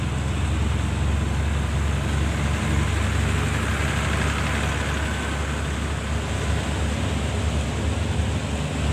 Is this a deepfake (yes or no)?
no